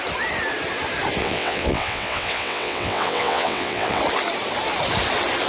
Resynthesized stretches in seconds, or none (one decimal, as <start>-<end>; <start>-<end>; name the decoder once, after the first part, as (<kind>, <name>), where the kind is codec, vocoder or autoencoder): 1.2-4.0 (vocoder, WaveNeXt)